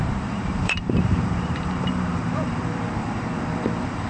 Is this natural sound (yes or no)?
no